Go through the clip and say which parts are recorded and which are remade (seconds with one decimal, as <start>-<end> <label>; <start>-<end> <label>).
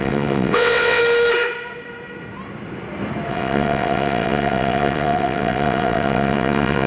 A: 0.0-1.0 remade; 1.0-3.3 recorded; 3.3-6.9 remade